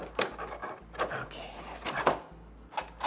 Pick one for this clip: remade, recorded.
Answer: recorded